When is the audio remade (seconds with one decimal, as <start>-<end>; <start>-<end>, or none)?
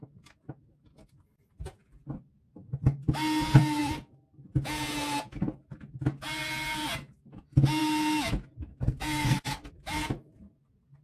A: 8.7-9.7